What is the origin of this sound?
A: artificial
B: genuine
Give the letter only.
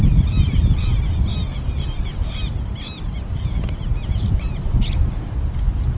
B